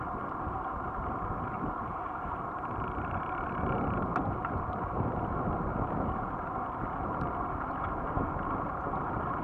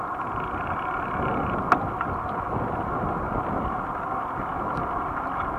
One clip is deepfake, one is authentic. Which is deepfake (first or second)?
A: first